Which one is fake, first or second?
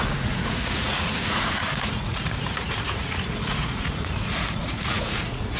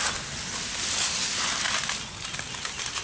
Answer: first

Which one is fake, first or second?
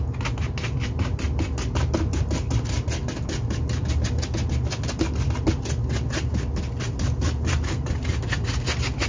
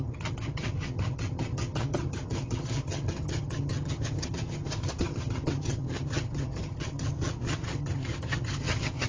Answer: second